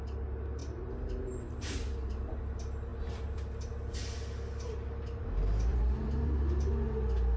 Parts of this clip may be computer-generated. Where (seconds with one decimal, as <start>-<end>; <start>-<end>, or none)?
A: 5.7-6.7